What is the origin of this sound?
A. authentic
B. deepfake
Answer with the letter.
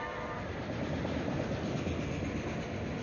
B